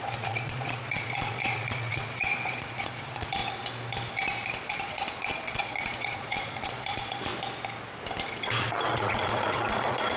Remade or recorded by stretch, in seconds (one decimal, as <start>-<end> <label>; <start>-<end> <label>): 0.0-3.4 remade; 3.4-4.7 recorded; 4.7-7.3 remade; 7.3-8.6 recorded; 8.6-10.2 remade